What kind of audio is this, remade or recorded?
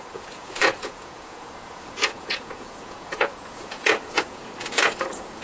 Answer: remade